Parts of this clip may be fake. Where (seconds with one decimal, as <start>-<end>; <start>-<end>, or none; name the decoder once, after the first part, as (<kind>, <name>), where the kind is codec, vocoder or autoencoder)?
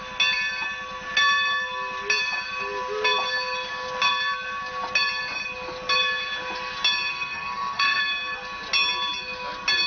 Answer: 7.1-8.0 (codec, SNAC)